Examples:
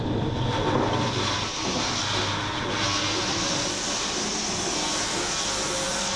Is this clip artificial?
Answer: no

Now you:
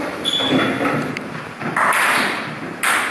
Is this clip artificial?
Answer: no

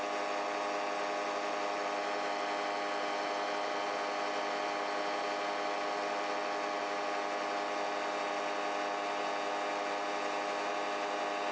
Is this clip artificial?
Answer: no